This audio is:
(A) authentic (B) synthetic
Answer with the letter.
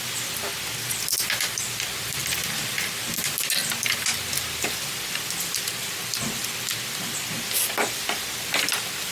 A